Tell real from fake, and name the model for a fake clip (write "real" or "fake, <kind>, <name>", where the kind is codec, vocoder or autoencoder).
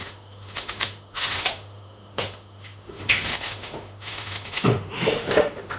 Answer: fake, autoencoder, DAC-VAE